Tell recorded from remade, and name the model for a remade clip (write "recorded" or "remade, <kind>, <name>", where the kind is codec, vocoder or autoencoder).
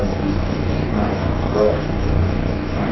remade, codec, DAC